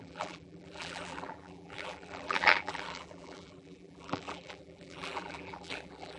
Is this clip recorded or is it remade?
remade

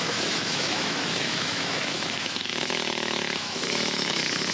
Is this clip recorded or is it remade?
remade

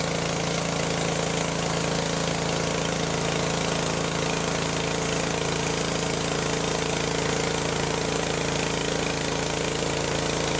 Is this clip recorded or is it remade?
recorded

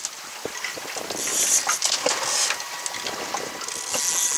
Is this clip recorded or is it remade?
recorded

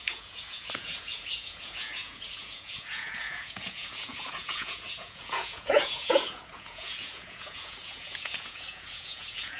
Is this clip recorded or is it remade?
remade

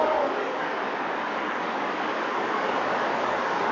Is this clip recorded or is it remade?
remade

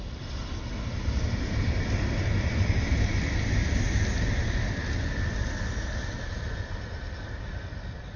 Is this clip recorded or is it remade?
recorded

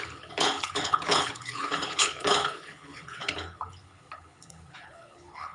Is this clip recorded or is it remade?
remade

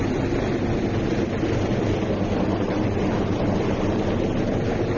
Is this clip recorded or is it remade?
recorded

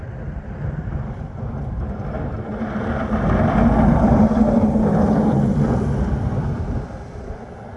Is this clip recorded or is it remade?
remade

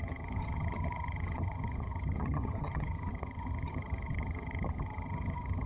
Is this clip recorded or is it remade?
remade